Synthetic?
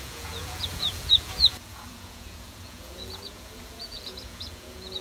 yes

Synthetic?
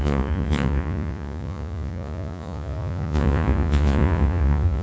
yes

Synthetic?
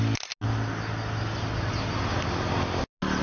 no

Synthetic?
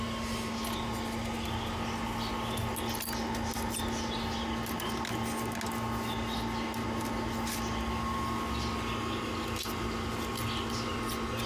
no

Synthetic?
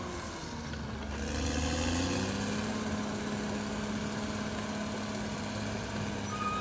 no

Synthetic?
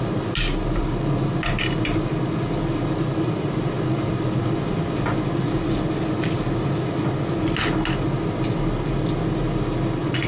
no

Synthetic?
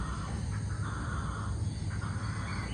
no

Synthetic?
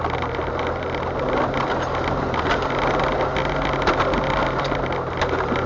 no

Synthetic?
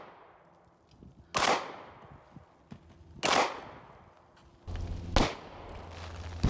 no